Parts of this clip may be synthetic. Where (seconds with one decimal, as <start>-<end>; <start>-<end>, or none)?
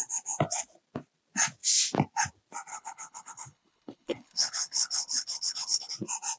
2.7-5.9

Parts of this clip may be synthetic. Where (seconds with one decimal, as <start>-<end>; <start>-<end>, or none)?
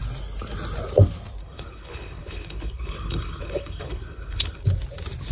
1.4-4.6